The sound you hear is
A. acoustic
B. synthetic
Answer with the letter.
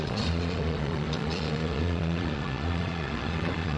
B